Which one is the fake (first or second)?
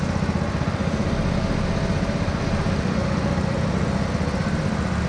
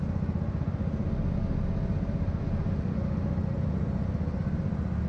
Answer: first